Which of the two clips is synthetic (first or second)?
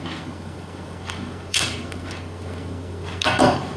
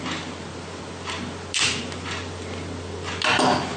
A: first